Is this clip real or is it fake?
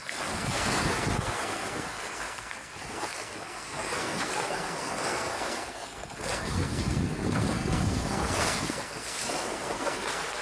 fake